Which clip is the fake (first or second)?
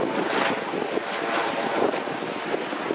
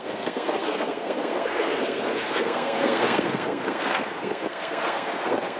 second